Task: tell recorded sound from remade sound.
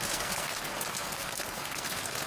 remade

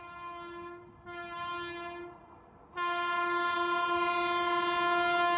recorded